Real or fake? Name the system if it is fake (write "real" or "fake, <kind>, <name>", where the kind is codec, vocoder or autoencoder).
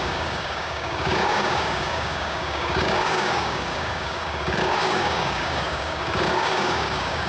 fake, codec, DAC